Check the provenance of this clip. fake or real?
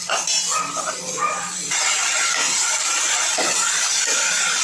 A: real